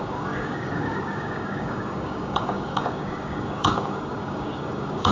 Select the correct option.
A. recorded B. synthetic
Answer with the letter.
B